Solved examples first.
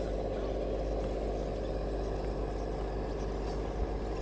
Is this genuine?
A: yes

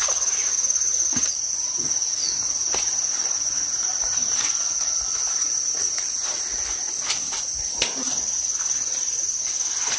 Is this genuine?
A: yes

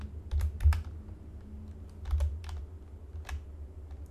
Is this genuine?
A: yes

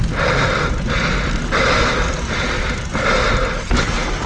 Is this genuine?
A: yes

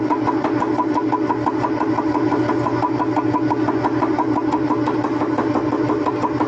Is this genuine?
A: yes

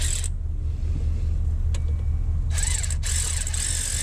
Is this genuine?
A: yes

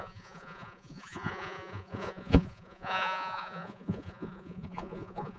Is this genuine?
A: no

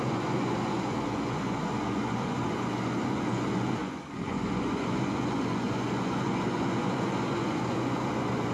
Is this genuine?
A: no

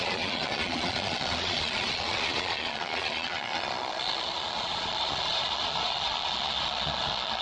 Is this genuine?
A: no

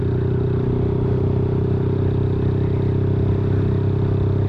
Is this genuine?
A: yes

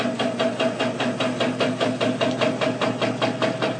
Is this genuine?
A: yes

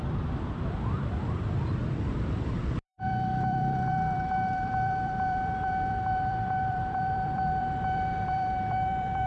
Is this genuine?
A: no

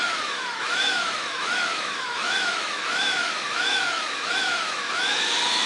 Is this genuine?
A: no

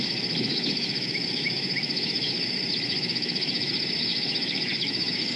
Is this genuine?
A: no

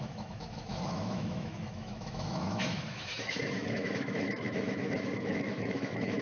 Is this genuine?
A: no